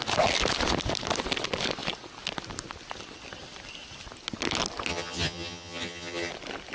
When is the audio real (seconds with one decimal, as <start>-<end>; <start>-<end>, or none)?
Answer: 0.0-4.9; 6.3-6.7